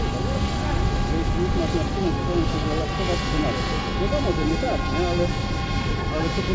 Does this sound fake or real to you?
real